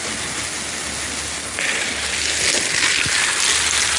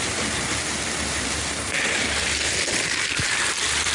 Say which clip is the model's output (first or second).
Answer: second